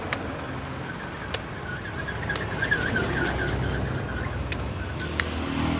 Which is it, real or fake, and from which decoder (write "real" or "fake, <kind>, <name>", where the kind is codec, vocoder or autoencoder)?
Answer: real